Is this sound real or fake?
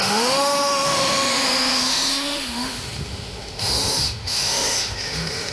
fake